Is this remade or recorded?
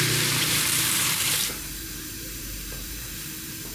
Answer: remade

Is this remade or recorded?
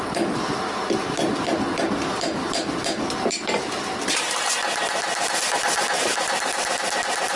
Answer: remade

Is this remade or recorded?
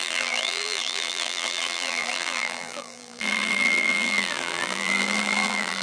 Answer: remade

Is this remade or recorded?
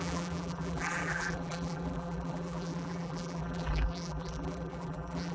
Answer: remade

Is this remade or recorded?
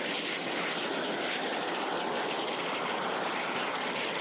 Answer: recorded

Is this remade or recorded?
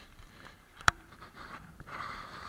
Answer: remade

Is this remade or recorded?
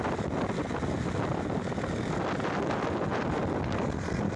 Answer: recorded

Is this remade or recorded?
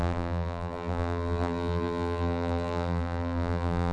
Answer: remade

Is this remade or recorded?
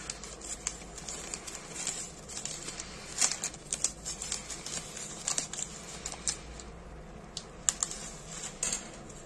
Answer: recorded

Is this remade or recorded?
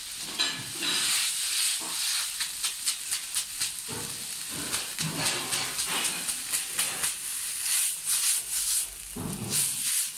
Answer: recorded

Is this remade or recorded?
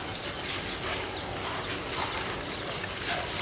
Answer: recorded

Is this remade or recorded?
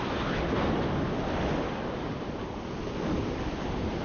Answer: recorded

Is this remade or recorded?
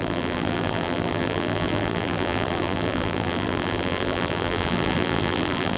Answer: remade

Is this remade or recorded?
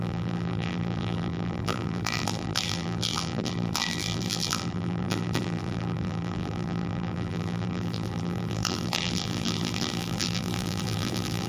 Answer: remade